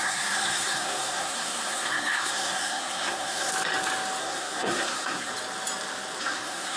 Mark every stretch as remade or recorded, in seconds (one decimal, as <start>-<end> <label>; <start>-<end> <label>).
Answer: 0.0-3.5 remade; 3.5-4.2 recorded; 4.2-5.3 remade; 5.3-6.2 recorded; 6.2-6.8 remade